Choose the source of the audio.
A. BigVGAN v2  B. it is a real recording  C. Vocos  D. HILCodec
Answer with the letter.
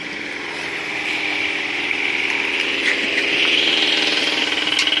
B